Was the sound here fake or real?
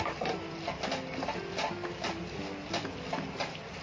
real